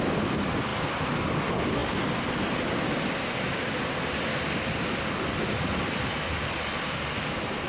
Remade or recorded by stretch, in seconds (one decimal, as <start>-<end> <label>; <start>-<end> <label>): 0.0-7.7 recorded